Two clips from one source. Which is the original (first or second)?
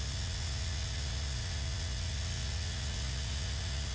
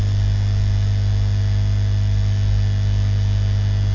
second